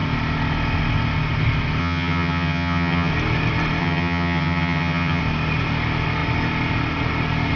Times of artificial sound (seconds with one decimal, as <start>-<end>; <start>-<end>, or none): 1.8-3.1; 3.8-5.2